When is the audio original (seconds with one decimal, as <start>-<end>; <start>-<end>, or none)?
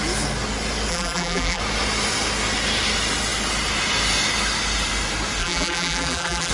0.0-0.9; 1.6-5.4